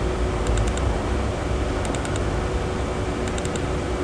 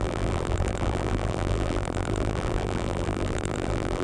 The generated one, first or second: second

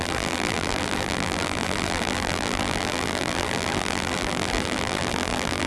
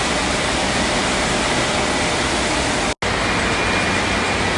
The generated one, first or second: first